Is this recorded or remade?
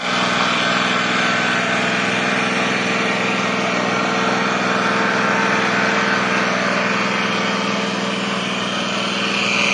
recorded